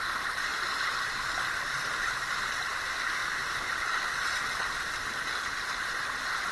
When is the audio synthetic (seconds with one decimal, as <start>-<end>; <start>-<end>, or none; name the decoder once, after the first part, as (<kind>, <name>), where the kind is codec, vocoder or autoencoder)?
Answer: none